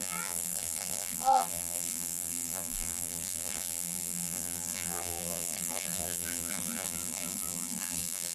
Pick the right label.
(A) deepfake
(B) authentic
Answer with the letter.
A